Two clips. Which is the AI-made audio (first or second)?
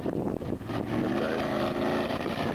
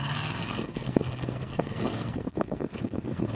second